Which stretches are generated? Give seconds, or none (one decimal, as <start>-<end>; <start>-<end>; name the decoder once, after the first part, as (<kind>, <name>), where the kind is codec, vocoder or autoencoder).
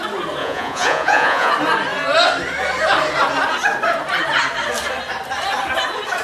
0.4-1.5 (vocoder, Vocos)